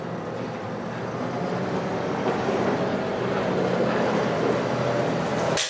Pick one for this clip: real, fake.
real